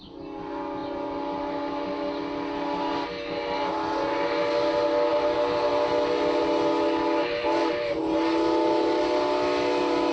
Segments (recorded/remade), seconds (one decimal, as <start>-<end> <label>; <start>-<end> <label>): 0.0-10.1 recorded